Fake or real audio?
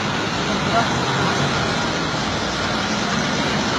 real